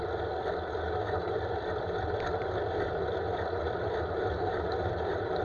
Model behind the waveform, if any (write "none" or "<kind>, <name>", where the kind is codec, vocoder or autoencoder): vocoder, BigVGAN v2